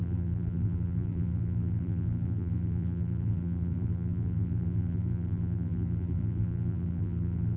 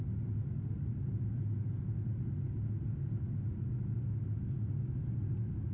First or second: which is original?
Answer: second